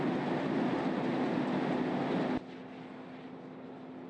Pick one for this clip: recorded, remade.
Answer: recorded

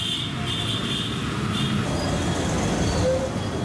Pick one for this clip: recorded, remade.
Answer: recorded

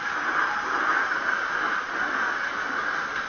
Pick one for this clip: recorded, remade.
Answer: recorded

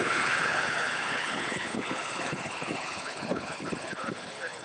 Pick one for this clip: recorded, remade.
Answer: remade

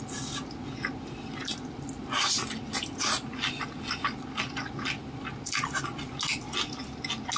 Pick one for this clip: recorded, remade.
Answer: recorded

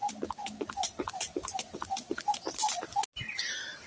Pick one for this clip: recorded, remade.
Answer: recorded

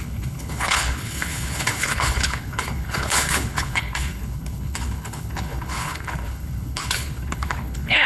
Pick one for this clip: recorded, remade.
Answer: remade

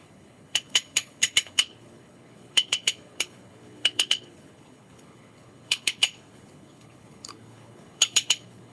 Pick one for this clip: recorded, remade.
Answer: remade